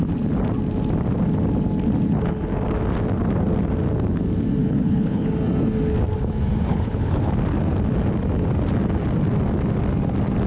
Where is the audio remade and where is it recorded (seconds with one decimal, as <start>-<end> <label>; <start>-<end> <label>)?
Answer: 0.0-4.6 recorded; 4.6-5.3 remade; 5.3-6.7 recorded; 6.7-7.3 remade; 7.3-10.5 recorded